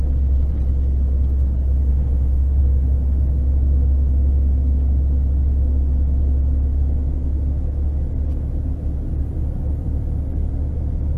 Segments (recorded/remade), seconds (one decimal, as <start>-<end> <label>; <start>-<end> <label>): 0.0-1.9 recorded; 1.9-2.6 remade; 2.6-11.2 recorded